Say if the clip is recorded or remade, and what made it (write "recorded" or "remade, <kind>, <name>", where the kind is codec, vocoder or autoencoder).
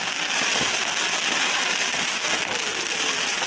remade, vocoder, BigVGAN v2